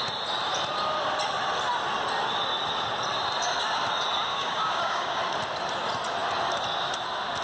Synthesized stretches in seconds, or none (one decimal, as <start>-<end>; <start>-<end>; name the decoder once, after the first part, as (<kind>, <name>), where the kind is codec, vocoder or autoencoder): 4.3-5.2 (codec, DAC)